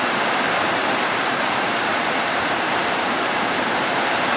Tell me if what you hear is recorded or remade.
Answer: remade